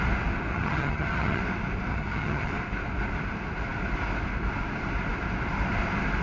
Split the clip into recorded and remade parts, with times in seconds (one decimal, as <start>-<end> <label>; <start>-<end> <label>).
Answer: 0.0-0.5 recorded; 0.5-1.4 remade; 1.4-1.9 recorded; 1.9-2.5 remade; 2.5-6.2 recorded

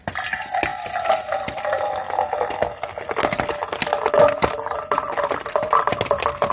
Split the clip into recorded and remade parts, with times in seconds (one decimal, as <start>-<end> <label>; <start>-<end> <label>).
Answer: 0.0-6.5 recorded

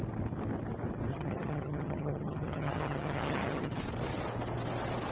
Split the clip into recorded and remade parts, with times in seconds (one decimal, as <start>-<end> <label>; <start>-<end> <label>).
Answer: 0.0-1.1 recorded; 1.1-3.8 remade; 3.8-5.1 recorded

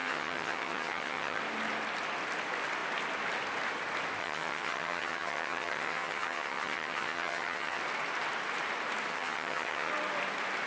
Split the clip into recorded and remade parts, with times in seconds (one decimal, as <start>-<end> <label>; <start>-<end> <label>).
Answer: 0.0-1.4 remade; 1.4-4.2 recorded; 4.2-7.8 remade; 7.8-9.1 recorded; 9.1-9.9 remade; 9.9-10.7 recorded

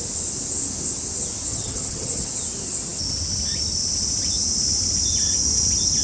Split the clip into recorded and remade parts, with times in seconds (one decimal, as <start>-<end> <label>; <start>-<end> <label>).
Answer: 0.0-1.5 recorded; 1.5-2.3 remade; 2.3-6.0 recorded